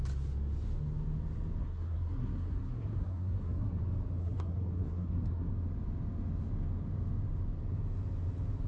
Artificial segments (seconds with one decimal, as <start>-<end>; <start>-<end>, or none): 1.6-3.8; 4.2-5.5